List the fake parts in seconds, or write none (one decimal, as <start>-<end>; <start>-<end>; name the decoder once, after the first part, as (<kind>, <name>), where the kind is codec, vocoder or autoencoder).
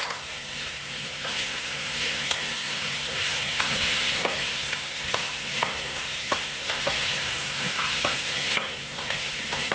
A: 0.0-9.7 (codec, SNAC)